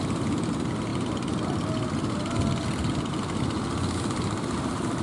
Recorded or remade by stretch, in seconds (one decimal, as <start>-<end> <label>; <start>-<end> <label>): 0.0-5.0 recorded